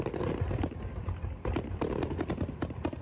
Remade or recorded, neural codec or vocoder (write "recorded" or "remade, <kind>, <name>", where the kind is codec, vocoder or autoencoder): recorded